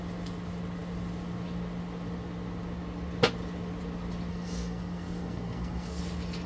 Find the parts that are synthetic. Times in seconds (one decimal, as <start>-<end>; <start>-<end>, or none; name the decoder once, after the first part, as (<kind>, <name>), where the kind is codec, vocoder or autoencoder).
4.3-6.0 (codec, SNAC)